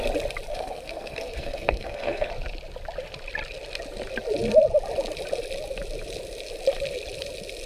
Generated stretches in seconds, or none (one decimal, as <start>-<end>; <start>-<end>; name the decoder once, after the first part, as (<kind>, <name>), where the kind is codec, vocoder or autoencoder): 0.5-2.3 (codec, SNAC)